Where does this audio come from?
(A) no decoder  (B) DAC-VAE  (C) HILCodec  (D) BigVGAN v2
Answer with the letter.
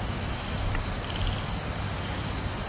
A